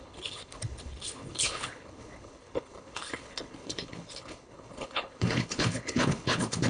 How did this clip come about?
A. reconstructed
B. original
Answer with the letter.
A